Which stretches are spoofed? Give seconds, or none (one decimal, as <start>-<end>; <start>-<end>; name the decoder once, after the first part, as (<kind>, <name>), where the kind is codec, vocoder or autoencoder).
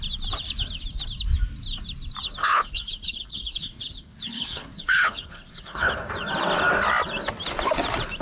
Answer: 2.4-5.9 (codec, HILCodec)